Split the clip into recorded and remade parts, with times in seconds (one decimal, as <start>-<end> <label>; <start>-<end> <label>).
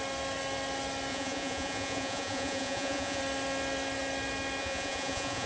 0.0-1.1 recorded; 1.1-3.2 remade; 3.2-4.6 recorded; 4.6-5.5 remade